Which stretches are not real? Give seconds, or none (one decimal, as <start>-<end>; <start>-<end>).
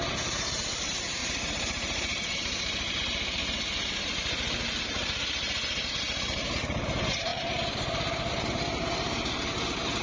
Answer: 0.0-10.0